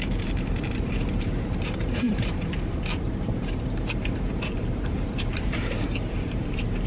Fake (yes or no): yes